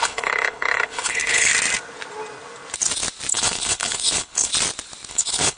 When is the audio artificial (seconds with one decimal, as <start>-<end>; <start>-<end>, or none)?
0.0-1.5; 3.3-4.5; 5.1-5.6